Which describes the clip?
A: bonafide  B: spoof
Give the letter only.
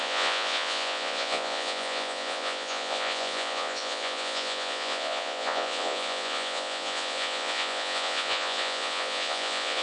B